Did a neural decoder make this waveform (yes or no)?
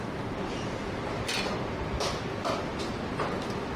no